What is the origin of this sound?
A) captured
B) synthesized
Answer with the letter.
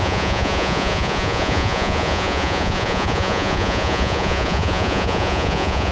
B